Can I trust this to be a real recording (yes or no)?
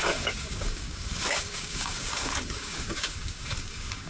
no